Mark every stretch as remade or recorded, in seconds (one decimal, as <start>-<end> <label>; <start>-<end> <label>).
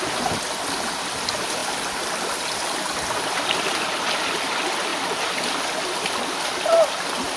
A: 0.0-7.4 recorded